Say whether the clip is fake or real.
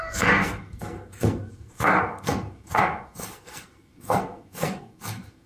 fake